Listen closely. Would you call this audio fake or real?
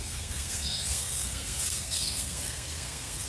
fake